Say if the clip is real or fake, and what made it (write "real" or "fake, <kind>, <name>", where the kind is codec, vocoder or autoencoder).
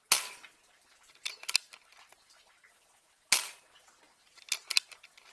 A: real